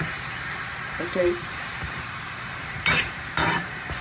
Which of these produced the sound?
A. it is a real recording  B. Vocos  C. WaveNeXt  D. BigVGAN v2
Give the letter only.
D